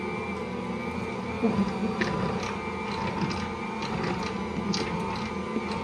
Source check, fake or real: real